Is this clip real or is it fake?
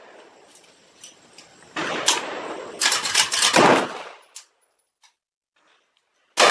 real